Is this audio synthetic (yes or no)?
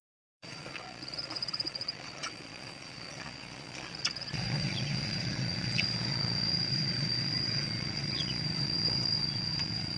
yes